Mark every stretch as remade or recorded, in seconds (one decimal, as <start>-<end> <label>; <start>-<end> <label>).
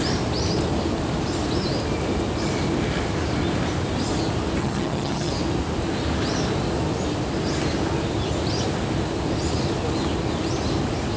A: 0.0-4.6 recorded; 4.6-5.3 remade; 5.3-11.2 recorded